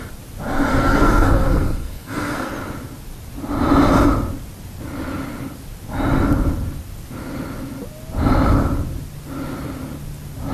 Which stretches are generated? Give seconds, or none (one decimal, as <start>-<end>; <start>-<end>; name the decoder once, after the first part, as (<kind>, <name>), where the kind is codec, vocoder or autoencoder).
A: 0.7-2.5 (codec, SNAC)